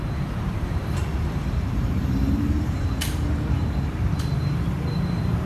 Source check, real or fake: fake